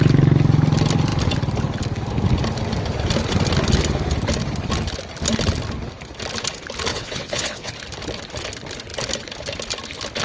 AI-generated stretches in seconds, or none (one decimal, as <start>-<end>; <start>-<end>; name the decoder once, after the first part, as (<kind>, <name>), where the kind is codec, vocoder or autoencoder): 6.9-7.7 (vocoder, WaveNeXt)